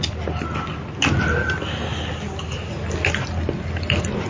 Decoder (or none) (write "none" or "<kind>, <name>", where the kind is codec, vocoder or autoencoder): none